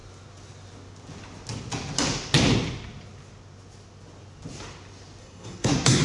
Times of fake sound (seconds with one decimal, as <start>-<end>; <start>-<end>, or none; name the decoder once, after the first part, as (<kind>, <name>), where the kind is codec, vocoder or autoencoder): 5.2-6.0 (codec, SNAC)